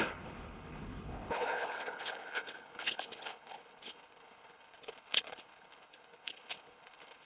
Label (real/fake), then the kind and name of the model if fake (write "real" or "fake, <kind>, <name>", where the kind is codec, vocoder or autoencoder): fake, codec, HILCodec